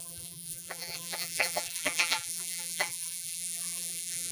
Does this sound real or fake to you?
fake